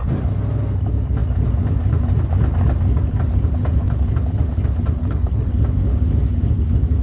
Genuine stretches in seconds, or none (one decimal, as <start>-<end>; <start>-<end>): 0.0-5.0; 5.5-7.0